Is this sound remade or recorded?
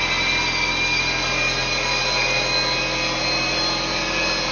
recorded